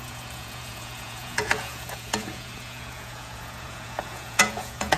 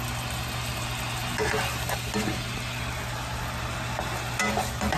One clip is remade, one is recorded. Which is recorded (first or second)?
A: second